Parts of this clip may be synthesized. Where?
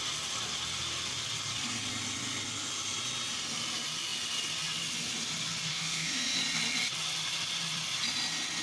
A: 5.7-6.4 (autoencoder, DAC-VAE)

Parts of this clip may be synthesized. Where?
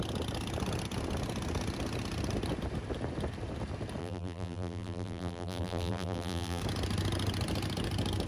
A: 4.0-6.6 (vocoder, BigVGAN v2)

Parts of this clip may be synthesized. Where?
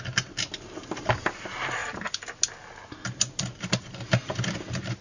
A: none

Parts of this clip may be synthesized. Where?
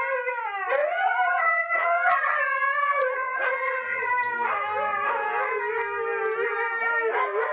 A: 0.8-2.4 (vocoder, Vocos); 3.0-4.1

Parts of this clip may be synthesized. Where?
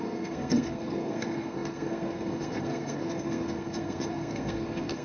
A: 0.0-5.0 (codec, SNAC)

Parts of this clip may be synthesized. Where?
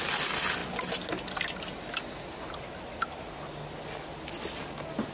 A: none